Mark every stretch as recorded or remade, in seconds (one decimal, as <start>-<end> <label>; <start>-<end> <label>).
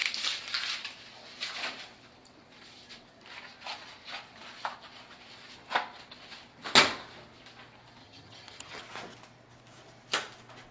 0.0-8.0 recorded; 8.0-8.8 remade; 8.8-10.7 recorded